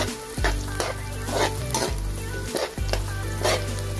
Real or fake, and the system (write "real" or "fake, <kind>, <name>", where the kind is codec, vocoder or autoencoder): real